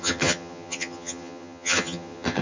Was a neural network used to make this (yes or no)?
yes